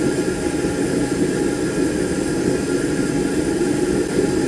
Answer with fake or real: real